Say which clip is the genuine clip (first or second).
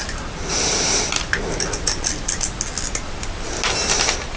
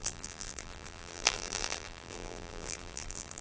first